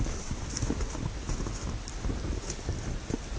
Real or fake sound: real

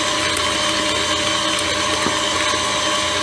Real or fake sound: real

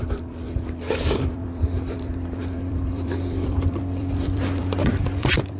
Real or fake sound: fake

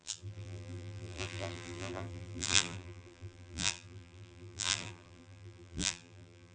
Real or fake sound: fake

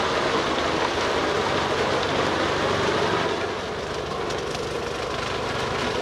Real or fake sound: real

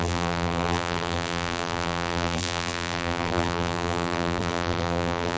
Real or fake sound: fake